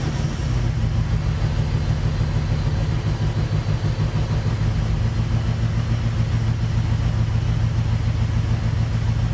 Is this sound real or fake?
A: real